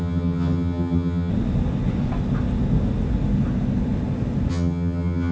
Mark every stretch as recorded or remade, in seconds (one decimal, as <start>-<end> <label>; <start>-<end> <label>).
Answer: 0.0-1.3 remade; 1.3-4.5 recorded; 4.5-5.3 remade